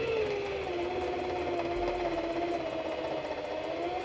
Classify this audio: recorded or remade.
recorded